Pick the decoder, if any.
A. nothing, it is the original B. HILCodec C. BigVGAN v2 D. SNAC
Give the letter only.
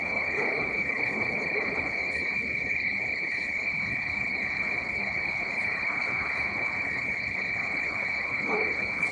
B